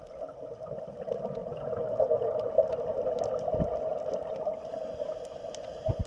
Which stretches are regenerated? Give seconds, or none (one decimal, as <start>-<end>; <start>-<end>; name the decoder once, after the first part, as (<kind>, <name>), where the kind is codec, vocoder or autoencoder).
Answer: none